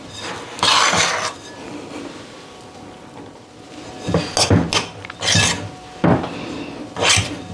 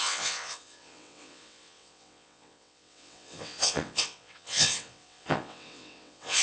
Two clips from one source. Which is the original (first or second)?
first